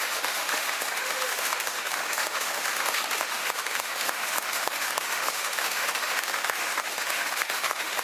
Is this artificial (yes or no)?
yes